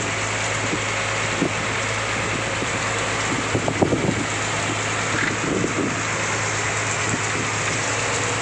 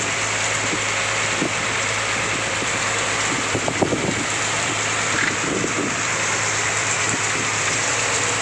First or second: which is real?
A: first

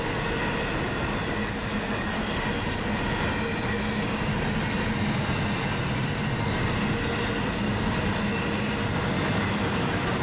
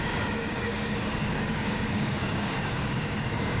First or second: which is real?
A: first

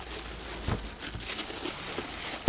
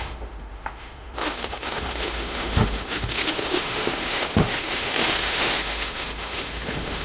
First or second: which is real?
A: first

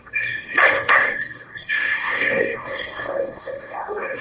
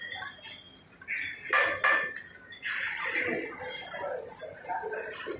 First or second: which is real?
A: second